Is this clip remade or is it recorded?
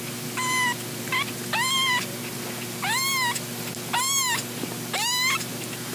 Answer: recorded